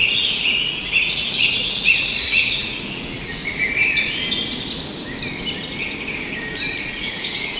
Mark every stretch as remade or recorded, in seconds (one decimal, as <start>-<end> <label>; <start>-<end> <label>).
0.0-3.4 remade; 3.4-6.8 recorded; 6.8-7.6 remade